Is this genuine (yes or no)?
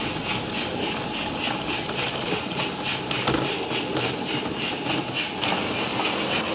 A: yes